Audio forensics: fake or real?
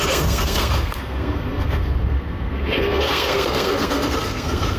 fake